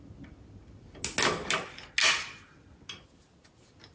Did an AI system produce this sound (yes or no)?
no